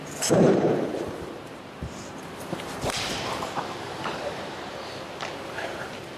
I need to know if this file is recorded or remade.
remade